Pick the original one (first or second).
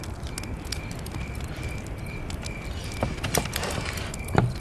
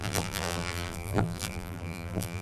first